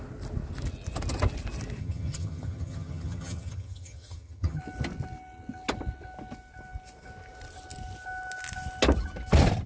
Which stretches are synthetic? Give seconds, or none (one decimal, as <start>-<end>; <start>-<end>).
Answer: 1.8-4.6